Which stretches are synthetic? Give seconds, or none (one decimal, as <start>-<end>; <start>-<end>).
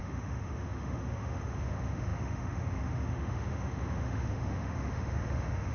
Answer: 0.0-5.7